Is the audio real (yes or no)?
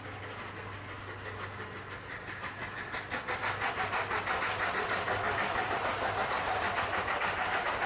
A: yes